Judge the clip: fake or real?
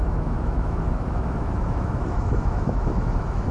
fake